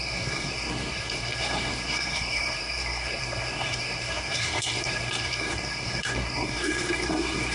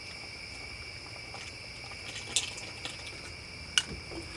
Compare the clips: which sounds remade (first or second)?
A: first